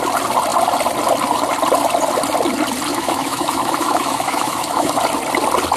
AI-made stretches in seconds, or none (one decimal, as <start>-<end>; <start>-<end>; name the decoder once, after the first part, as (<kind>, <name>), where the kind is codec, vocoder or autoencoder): 2.9-4.9 (autoencoder, DAC-VAE)